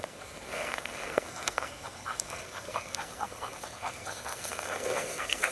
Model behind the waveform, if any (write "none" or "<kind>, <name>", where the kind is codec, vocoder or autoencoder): codec, SNAC